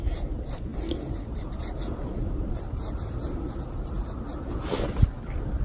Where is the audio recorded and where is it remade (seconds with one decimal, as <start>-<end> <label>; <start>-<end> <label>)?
0.0-5.6 remade